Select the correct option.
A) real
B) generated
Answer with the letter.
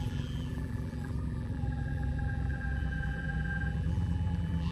B